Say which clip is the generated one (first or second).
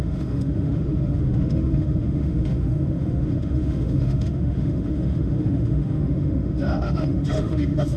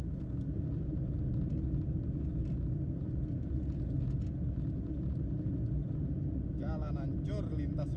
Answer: first